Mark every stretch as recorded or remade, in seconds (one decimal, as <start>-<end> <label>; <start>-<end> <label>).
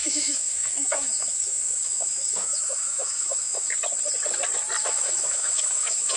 0.0-3.7 remade; 3.7-4.8 recorded; 4.8-6.2 remade